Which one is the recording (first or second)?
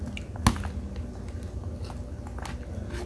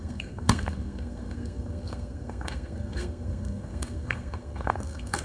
first